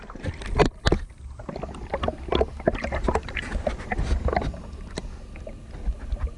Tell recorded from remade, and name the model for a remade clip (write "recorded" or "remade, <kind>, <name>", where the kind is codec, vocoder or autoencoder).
recorded